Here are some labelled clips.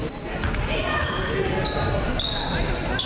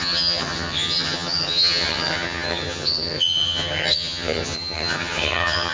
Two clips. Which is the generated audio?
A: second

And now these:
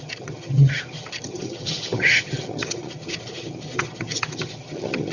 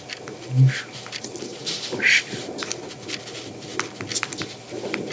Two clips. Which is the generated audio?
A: first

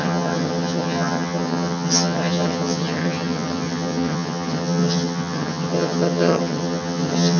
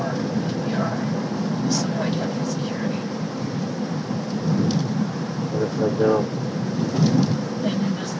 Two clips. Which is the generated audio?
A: first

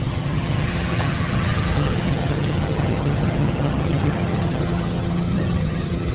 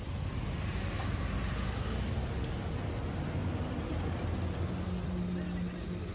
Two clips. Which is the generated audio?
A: first